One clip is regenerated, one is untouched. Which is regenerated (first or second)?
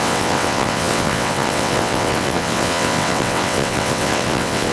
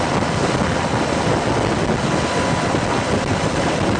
first